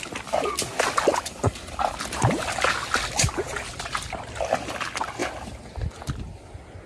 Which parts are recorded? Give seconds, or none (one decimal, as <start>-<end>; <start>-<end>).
0.0-1.1; 2.4-6.9